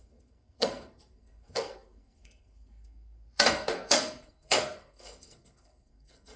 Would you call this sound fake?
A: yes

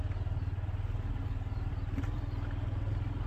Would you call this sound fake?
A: no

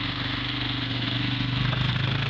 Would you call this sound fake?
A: yes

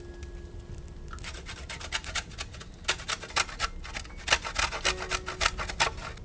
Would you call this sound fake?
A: no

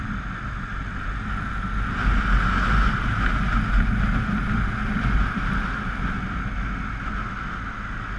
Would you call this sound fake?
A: no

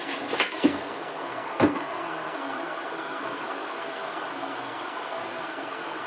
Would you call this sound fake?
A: yes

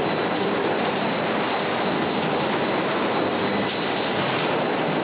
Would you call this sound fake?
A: no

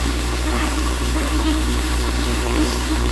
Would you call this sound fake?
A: yes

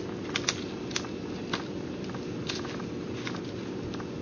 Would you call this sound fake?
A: no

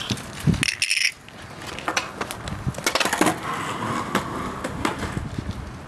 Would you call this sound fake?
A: no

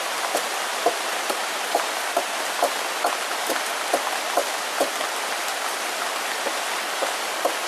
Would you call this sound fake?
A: no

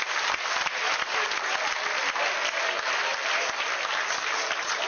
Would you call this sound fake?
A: no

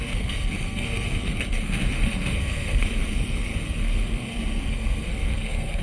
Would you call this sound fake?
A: yes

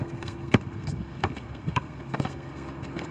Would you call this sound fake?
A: yes